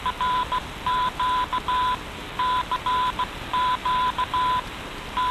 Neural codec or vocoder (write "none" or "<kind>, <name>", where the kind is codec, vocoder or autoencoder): none